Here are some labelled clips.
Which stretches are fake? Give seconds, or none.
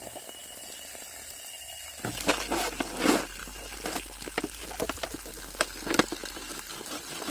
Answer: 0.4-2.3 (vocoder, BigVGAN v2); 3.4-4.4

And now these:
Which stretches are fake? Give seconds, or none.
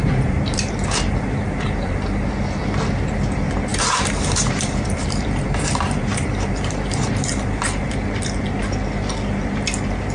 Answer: 0.0-2.3 (vocoder, BigVGAN v2); 3.7-7.9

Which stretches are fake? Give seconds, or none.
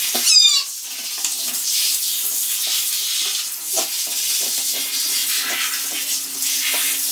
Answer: 1.3-1.9 (vocoder, BigVGAN v2); 3.0-3.6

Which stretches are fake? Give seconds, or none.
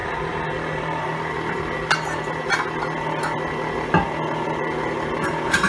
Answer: none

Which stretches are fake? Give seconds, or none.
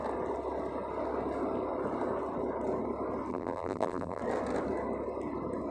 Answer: 3.3-4.2 (vocoder, BigVGAN v2)